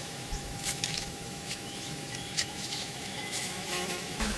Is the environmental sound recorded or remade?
remade